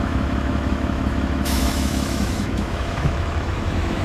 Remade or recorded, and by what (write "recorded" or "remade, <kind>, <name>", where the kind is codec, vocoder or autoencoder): remade, autoencoder, DAC-VAE